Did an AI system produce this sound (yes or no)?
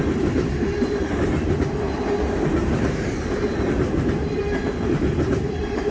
yes